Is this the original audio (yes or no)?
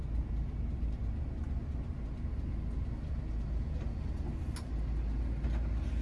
yes